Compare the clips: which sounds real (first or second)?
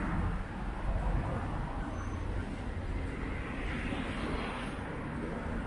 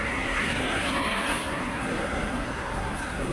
first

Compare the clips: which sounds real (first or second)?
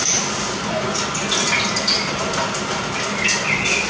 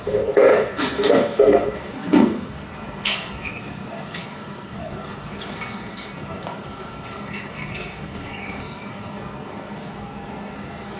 first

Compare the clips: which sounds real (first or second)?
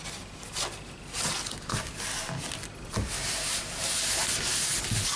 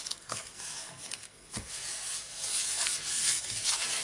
first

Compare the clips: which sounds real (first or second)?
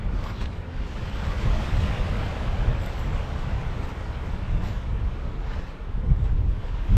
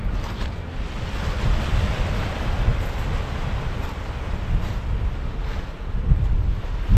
second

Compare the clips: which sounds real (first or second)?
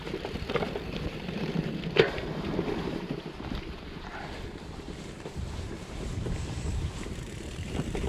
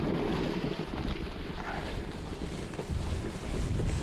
second